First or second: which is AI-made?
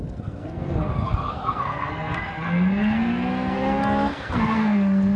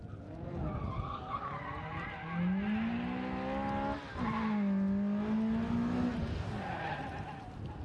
first